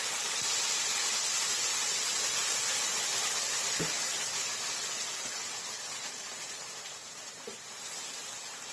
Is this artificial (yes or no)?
no